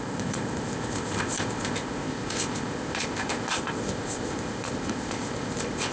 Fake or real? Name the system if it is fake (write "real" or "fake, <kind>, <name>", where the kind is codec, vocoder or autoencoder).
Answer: fake, codec, ZipCodec